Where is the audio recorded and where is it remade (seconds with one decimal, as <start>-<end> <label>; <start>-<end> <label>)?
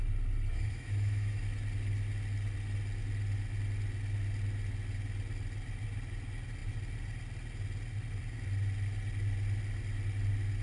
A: 0.0-0.5 recorded; 0.5-1.4 remade; 1.4-10.6 recorded